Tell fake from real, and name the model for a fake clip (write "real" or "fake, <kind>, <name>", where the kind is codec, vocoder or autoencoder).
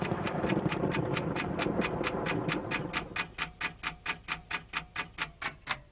real